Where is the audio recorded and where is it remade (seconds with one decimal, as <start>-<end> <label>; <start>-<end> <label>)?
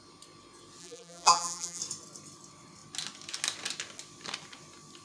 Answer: 0.0-0.8 recorded; 0.8-1.8 remade; 1.8-5.0 recorded